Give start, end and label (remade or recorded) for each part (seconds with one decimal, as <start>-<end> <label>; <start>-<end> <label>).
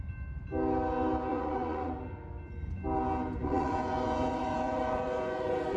0.0-1.3 recorded; 1.3-1.9 remade; 1.9-3.4 recorded; 3.4-5.8 remade